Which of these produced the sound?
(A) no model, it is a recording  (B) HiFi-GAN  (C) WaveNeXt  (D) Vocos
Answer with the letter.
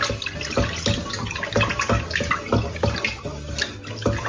A